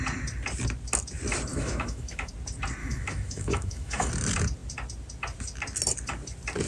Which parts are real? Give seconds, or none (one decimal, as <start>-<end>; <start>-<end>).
0.0-1.5; 2.3-2.8; 4.1-6.7